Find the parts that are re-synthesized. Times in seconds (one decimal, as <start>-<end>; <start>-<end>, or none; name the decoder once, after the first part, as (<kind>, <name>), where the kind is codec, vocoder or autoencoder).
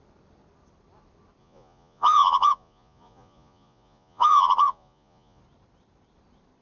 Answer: 1.4-5.4 (vocoder, Vocos)